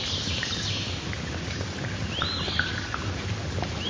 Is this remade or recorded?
recorded